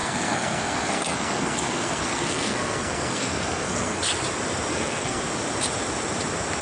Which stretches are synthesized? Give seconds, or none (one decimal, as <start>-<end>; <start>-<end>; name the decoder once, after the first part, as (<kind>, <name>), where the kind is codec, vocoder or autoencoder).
0.0-4.0 (codec, SNAC); 4.7-5.2